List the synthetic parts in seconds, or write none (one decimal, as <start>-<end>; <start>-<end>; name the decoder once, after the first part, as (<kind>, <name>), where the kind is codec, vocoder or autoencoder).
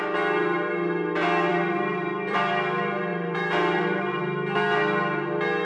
1.5-2.5 (vocoder, BigVGAN v2); 3.1-4.2